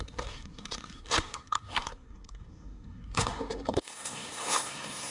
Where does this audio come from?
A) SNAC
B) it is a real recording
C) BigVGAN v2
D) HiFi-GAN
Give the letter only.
A